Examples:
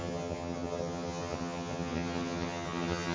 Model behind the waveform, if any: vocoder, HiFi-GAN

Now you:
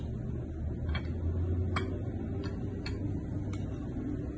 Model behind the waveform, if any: none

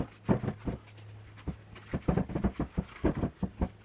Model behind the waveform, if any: none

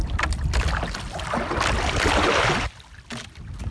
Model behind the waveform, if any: none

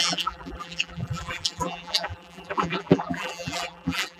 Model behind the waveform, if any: vocoder, BigVGAN v2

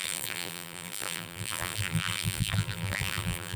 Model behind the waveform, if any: vocoder, BigVGAN v2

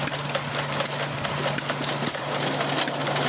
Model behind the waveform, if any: none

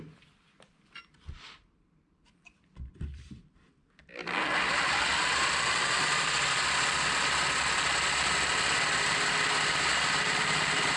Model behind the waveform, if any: vocoder, BigVGAN v2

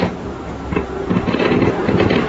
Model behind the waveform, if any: none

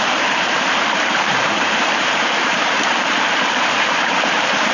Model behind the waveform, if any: vocoder, BigVGAN v2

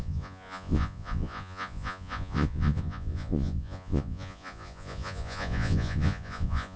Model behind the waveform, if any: vocoder, Vocos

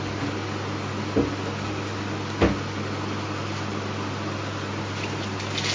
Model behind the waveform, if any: none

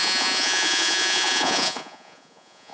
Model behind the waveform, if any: vocoder, Vocos